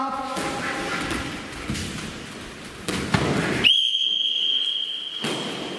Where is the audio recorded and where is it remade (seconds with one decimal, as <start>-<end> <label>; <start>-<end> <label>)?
0.0-0.9 recorded; 0.9-3.9 remade; 3.9-5.8 recorded